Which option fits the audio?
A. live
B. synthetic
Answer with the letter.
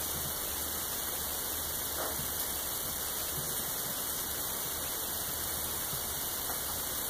A